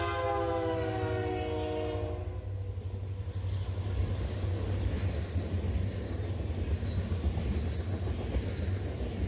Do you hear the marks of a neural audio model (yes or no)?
no